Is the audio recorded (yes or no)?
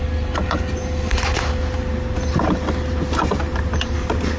yes